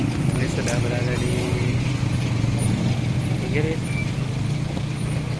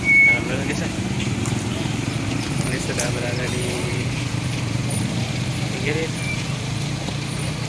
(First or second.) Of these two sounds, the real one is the first